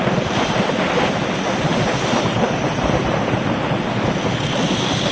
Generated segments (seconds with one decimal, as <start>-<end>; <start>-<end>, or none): 1.7-3.9

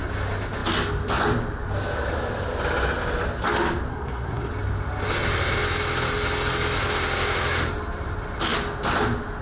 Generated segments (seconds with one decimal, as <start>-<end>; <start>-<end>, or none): 3.9-4.5

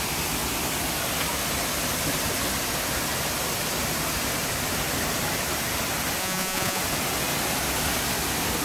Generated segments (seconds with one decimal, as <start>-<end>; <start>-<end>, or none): 6.2-6.8